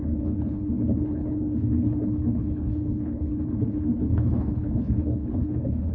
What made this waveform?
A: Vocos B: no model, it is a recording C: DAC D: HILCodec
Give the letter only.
D